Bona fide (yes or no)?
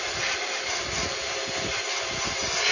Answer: yes